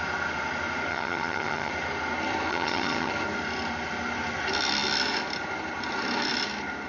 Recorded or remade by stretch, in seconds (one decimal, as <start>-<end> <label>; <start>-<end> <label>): 0.0-0.9 recorded; 0.9-1.7 remade; 1.7-2.5 recorded; 2.5-3.1 remade; 3.1-6.9 recorded